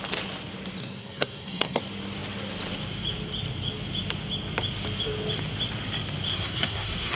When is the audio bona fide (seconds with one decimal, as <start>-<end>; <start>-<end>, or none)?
0.0-0.8; 1.8-6.3